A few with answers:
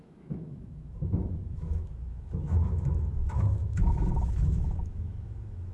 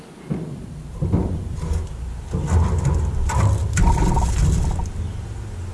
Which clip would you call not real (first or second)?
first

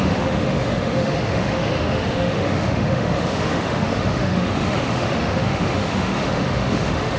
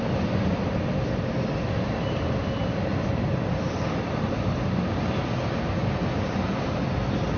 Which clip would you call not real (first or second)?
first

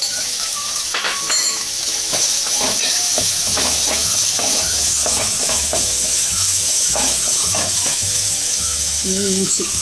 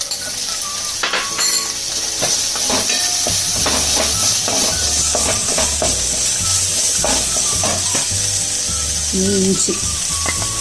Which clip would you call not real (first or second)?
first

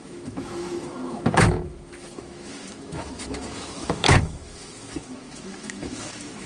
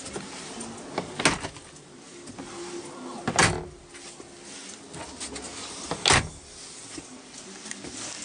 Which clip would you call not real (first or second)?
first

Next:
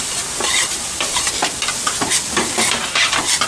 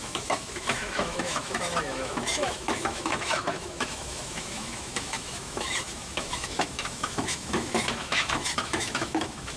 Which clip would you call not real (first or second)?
second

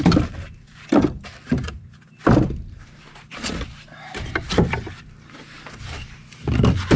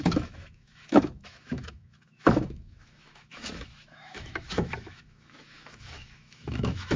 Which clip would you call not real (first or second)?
second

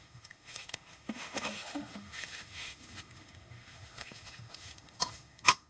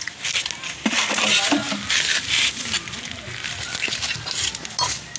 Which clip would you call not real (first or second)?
first